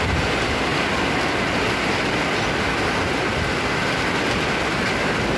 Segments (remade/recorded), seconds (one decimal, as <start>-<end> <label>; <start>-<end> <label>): 0.0-5.4 recorded